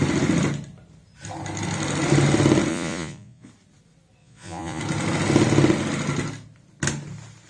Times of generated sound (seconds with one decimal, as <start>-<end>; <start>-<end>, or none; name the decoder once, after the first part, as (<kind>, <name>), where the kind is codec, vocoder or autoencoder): 2.7-3.5 (vocoder, Vocos); 4.2-4.8